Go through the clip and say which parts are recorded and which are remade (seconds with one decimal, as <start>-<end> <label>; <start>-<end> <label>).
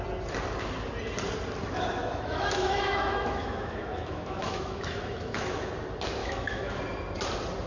0.0-2.0 recorded; 2.0-5.7 remade; 5.7-6.2 recorded; 6.2-6.8 remade; 6.8-7.7 recorded